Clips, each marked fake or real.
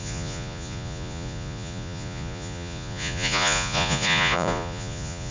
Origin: fake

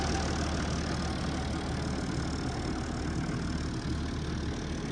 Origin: real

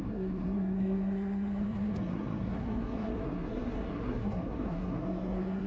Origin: fake